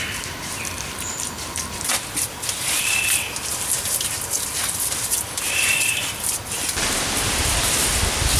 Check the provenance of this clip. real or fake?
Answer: fake